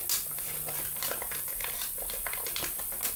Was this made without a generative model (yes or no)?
yes